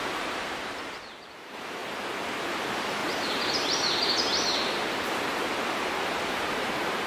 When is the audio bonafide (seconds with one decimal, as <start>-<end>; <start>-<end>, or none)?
1.8-2.4; 3.0-3.5